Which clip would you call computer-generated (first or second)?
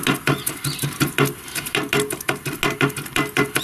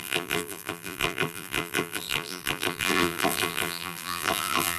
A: second